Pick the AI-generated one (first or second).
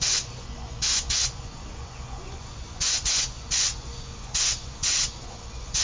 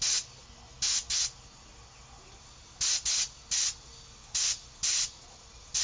first